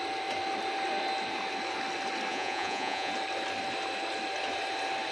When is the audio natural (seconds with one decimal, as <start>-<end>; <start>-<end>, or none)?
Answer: 0.0-2.3; 3.1-5.1